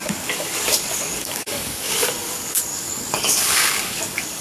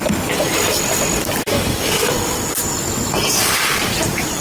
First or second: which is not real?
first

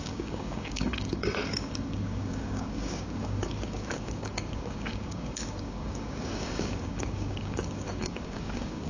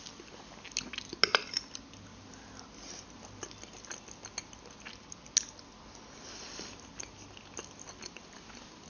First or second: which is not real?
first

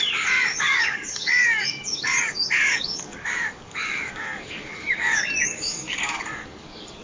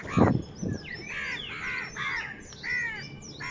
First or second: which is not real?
first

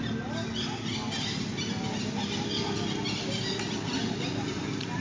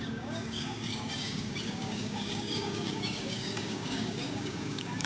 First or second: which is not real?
second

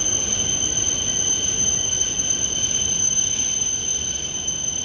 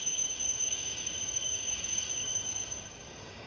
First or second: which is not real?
second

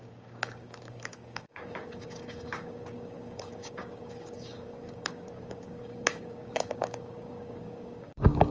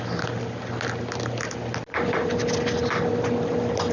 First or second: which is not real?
first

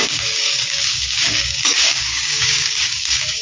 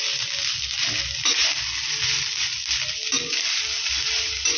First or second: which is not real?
first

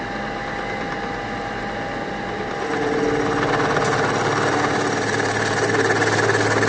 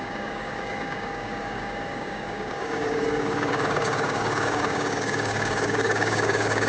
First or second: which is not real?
second